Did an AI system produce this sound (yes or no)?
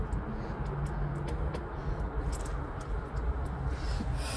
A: no